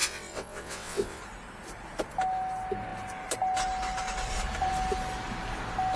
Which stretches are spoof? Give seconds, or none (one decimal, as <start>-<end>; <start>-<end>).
0.0-1.2